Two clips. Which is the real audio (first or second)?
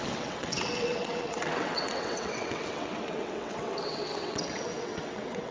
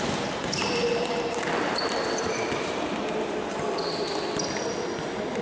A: second